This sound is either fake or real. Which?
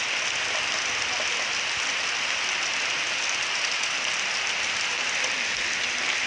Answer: real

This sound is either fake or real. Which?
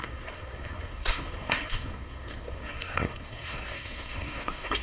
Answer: fake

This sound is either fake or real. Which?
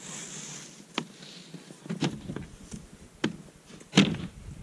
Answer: real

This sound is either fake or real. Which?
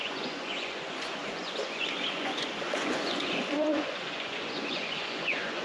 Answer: fake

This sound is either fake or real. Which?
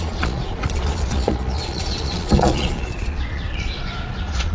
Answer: fake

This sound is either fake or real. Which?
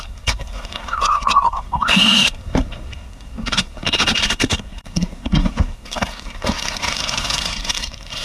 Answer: fake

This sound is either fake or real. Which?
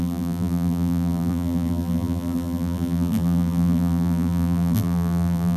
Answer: fake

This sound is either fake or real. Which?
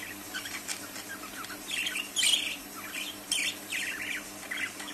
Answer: real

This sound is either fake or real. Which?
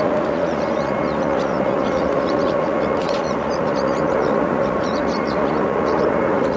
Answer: fake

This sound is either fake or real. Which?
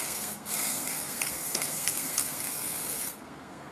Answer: fake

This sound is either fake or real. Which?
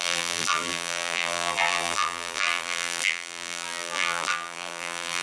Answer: fake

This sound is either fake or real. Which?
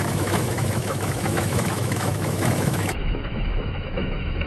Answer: fake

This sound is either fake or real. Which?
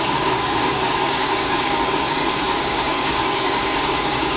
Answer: fake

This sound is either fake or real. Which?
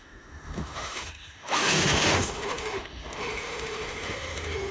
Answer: fake